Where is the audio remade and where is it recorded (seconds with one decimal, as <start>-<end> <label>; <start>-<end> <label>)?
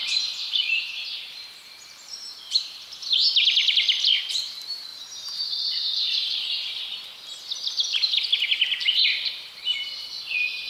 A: 0.0-3.1 remade; 3.1-8.8 recorded; 8.8-9.6 remade; 9.6-10.7 recorded